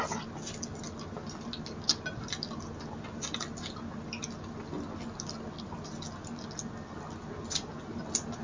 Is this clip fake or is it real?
real